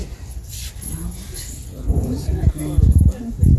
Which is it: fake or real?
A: real